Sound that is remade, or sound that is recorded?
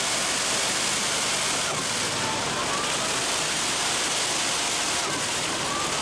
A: recorded